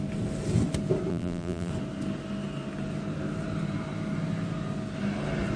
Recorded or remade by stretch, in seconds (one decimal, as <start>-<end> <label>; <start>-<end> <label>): 0.0-1.1 recorded; 1.1-1.7 remade; 1.7-5.6 recorded